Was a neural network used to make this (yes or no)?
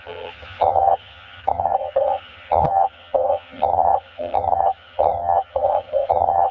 yes